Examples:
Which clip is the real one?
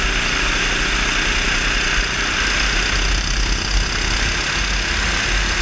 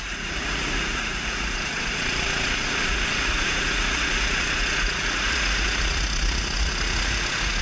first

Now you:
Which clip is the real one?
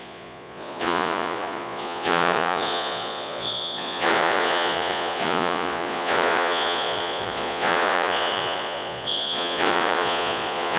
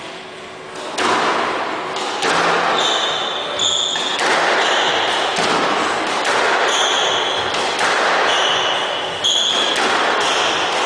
second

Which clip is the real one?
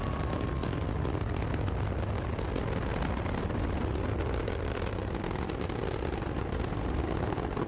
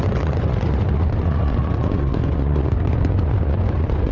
first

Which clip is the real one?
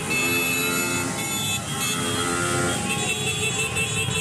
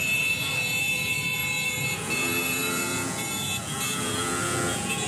first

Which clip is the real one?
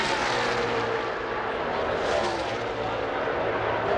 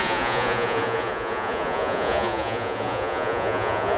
first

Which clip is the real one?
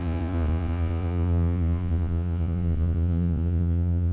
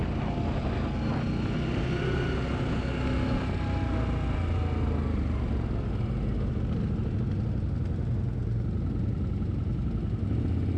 second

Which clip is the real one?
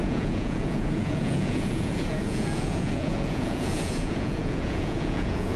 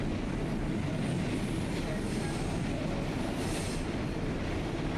second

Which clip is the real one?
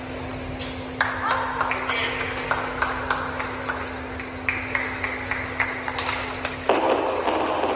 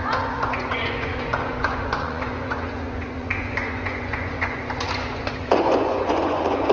first